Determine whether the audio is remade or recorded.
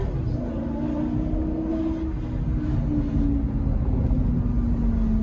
recorded